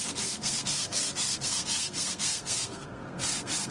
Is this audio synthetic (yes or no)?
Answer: yes